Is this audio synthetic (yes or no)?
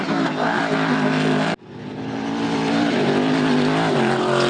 no